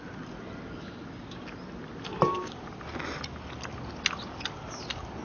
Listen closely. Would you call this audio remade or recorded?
recorded